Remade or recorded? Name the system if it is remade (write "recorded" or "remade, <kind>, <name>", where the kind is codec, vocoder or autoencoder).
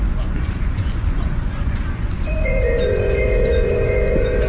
remade, vocoder, Vocos